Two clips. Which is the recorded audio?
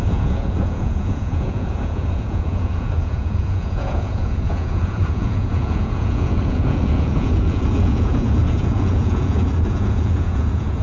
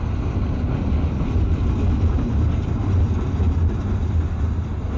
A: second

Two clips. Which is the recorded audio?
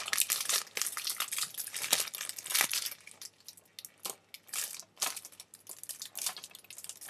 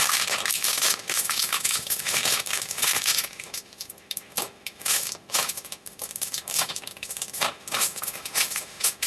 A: first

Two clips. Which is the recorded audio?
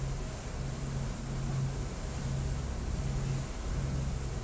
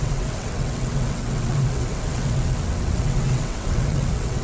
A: first